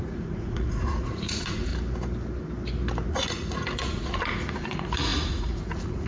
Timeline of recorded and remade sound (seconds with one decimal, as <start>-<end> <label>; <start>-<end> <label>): 0.0-1.7 remade; 1.7-3.1 recorded; 3.1-6.1 remade